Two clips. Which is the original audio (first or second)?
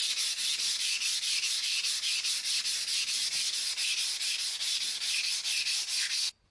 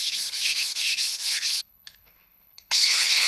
first